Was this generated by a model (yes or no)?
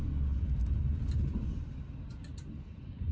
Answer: no